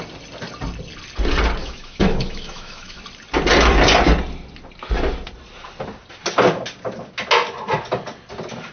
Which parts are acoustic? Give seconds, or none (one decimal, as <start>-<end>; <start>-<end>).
0.0-1.6; 3.0-8.7